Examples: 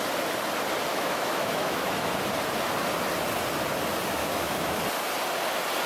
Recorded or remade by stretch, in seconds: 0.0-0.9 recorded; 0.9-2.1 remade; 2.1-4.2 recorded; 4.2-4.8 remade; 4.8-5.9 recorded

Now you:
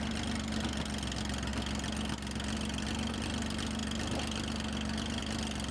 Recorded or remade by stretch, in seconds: 0.0-5.7 recorded

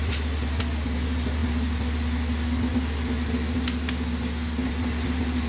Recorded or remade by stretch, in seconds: 0.0-5.5 recorded